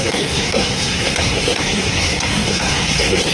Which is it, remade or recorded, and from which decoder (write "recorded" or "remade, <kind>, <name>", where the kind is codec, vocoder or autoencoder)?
remade, codec, SNAC